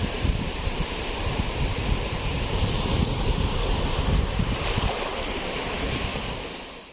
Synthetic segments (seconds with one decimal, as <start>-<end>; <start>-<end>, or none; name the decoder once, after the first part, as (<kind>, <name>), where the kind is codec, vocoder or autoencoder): 0.0-6.1 (vocoder, BigVGAN v2)